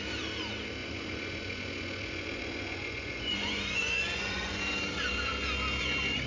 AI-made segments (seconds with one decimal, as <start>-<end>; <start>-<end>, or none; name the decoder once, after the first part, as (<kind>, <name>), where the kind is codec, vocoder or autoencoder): 0.8-4.6 (vocoder, Vocos)